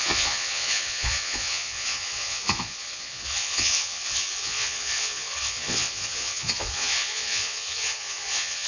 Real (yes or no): no